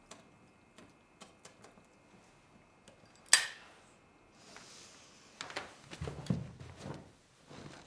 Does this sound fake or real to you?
real